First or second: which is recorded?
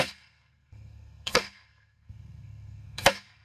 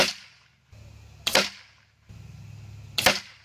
second